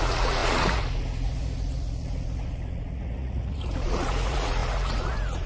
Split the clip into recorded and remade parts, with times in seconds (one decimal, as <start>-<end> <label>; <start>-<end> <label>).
0.0-5.5 remade